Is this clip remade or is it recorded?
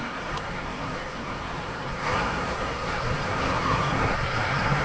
remade